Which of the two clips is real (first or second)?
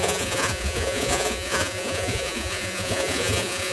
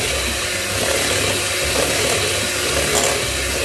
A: second